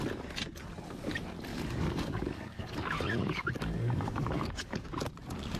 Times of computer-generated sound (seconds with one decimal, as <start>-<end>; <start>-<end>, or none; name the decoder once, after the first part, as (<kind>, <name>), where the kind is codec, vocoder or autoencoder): 1.5-4.9 (codec, DAC)